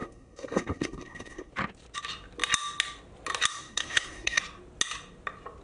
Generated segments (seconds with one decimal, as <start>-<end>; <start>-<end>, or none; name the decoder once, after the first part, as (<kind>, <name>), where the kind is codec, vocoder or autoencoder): 0.0-1.5 (codec, SNAC); 3.5-4.4